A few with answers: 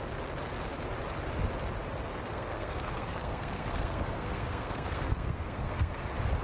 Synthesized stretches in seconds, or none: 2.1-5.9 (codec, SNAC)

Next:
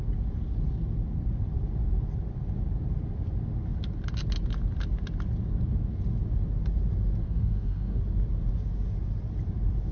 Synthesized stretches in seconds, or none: 7.2-8.0 (codec, DAC)

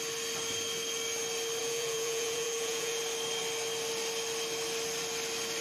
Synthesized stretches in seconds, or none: 1.6-3.0 (vocoder, Vocos)